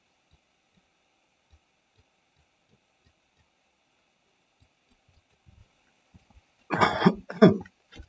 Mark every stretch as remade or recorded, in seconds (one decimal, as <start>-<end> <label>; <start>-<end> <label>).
0.0-8.1 recorded